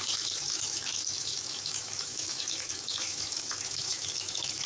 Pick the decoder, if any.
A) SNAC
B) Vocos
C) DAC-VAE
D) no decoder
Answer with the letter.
C